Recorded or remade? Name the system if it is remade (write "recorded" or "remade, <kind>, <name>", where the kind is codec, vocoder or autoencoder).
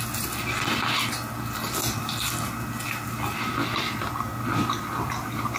recorded